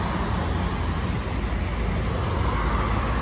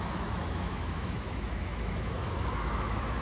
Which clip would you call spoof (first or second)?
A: second